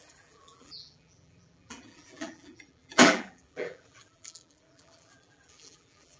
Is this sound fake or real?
fake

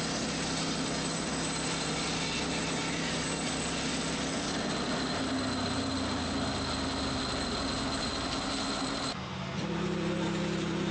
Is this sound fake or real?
real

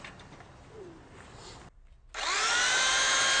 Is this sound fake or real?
real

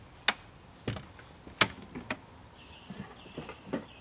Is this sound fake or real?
real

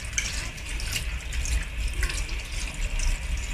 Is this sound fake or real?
real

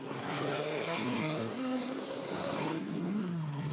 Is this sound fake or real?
fake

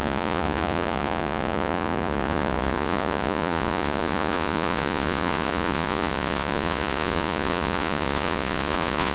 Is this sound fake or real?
fake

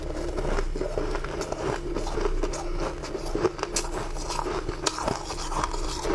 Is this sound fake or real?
real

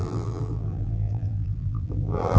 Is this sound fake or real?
fake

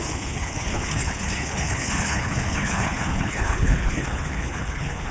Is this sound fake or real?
fake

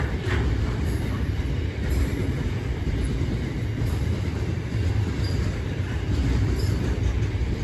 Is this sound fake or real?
fake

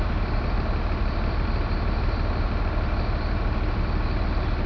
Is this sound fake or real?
real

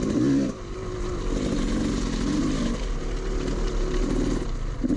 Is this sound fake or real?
real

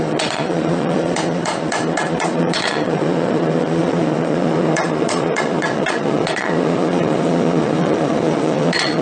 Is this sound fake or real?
fake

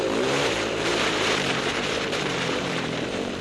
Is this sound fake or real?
fake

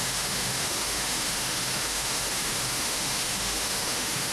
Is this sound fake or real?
fake